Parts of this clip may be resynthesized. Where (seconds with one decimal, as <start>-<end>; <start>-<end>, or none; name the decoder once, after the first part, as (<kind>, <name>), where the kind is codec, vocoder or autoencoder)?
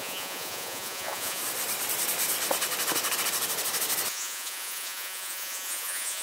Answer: 0.0-1.4 (vocoder, Vocos); 4.1-6.2